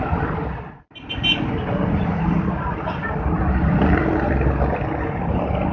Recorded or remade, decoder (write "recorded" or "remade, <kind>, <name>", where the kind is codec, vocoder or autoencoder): recorded